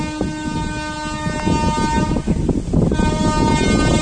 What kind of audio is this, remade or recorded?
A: recorded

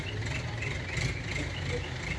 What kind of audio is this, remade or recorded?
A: recorded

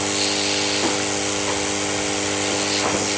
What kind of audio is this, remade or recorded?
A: recorded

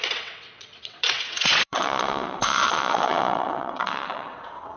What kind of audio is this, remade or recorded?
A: remade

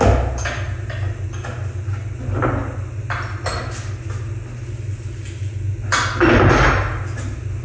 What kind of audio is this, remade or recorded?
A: recorded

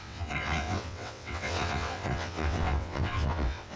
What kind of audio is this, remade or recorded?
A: remade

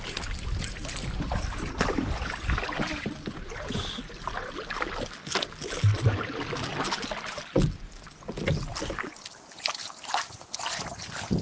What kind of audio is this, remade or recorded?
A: recorded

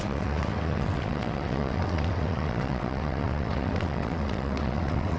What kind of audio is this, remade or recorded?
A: remade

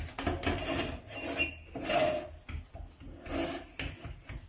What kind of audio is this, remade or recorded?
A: recorded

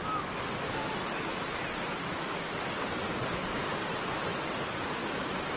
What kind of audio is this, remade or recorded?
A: recorded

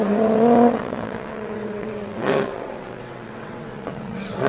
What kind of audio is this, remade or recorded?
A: remade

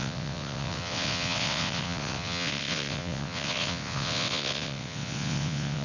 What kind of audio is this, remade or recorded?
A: remade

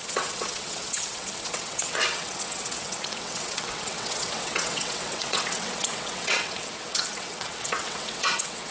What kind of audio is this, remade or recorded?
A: remade